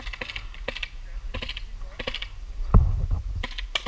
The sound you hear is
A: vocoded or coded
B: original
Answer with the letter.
B